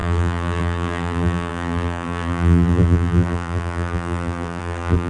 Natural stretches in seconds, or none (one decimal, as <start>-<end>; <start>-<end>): none